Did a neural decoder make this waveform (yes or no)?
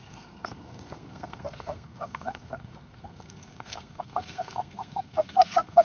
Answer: yes